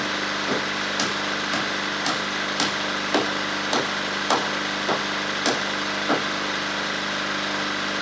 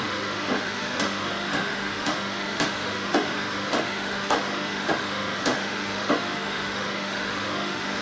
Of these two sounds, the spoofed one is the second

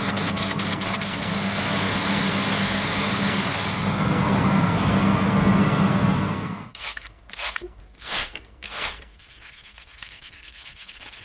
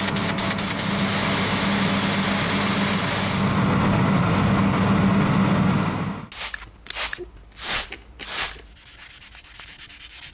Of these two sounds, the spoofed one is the first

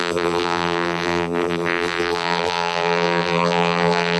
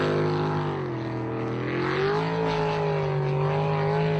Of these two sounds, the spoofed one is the first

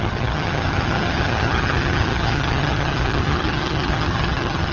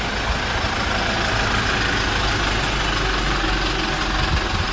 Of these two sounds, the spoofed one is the first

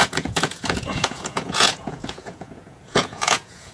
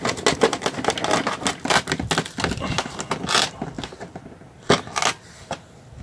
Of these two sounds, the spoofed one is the first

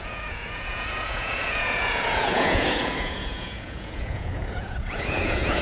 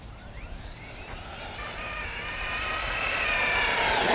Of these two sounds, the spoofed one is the first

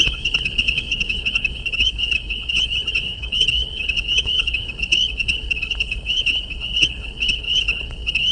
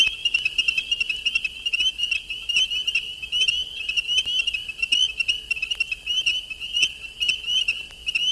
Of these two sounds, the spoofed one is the first